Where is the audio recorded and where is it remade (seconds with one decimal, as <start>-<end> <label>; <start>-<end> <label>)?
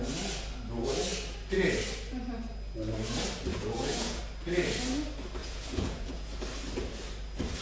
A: 0.0-3.5 recorded; 3.5-4.2 remade; 4.2-5.4 recorded; 5.4-6.2 remade; 6.2-7.6 recorded